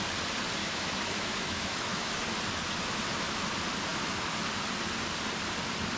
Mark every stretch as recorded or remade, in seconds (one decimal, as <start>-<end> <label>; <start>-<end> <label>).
0.0-0.6 recorded; 0.6-2.1 remade; 2.1-6.0 recorded

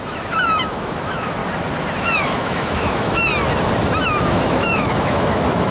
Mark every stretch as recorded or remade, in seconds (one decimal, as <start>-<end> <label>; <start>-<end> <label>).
0.0-1.4 remade; 1.4-2.0 recorded; 2.0-3.3 remade; 3.3-4.2 recorded; 4.2-5.7 remade

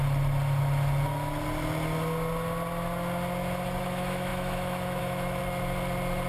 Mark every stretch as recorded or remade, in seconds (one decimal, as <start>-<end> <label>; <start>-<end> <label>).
0.0-3.8 recorded; 3.8-5.4 remade; 5.4-6.3 recorded

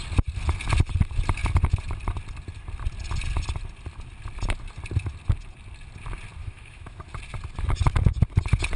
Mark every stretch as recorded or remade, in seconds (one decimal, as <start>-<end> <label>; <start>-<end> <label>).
0.0-6.4 recorded; 6.4-7.0 remade; 7.0-8.8 recorded

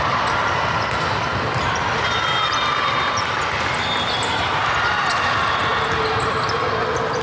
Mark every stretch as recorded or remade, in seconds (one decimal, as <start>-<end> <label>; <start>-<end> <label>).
0.0-7.2 recorded